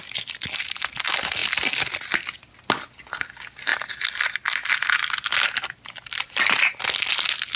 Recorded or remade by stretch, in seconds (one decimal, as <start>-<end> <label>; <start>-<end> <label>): 0.0-7.6 recorded